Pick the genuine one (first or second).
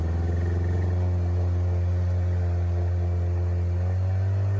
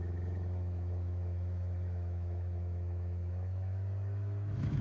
first